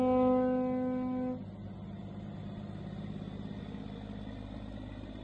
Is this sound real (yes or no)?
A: yes